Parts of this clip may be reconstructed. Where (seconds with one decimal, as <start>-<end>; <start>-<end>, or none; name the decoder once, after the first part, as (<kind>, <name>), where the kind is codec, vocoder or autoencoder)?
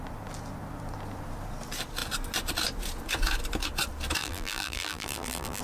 4.2-5.6 (vocoder, BigVGAN v2)